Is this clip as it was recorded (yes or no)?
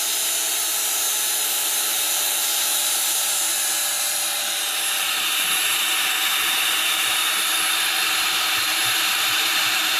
no